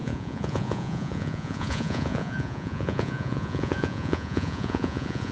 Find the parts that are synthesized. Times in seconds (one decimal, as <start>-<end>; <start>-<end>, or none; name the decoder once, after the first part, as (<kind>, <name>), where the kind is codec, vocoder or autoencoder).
0.0-5.3 (vocoder, Vocos)